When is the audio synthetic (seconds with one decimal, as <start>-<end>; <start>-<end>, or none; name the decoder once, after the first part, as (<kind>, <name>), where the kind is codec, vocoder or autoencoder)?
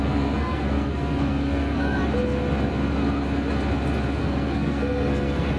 0.0-2.0 (codec, SNAC); 4.2-5.6